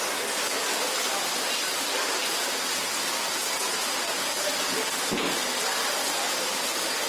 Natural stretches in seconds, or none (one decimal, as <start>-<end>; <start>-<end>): 0.0-7.1